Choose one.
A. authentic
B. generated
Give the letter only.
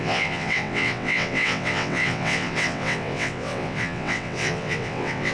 B